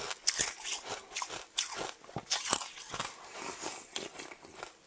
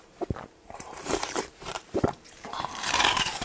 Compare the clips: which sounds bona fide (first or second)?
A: first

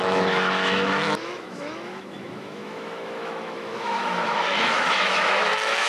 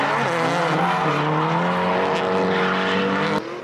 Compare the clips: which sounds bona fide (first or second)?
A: second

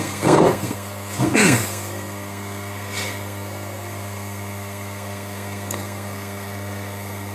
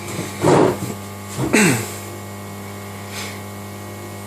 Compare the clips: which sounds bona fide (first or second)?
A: second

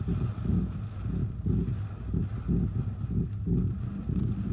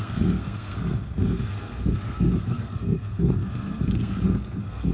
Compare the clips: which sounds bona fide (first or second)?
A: first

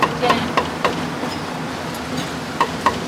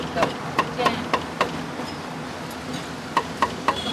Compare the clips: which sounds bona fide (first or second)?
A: second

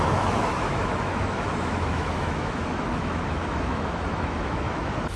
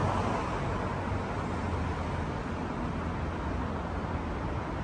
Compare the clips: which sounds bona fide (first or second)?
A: second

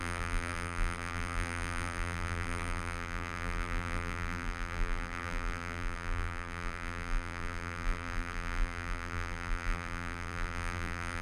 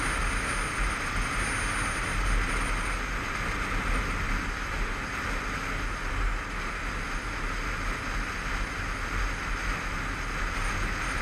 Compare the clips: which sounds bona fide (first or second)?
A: second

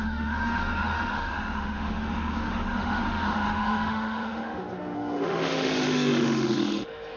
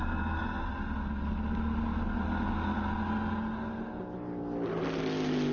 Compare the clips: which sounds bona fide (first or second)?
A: second